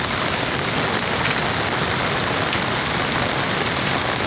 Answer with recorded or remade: recorded